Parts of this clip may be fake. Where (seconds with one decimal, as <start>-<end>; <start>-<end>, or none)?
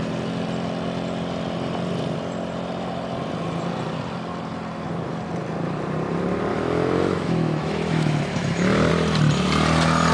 6.5-8.9